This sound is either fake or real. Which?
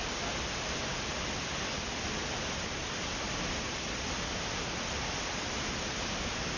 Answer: real